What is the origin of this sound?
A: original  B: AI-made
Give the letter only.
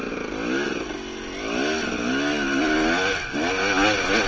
A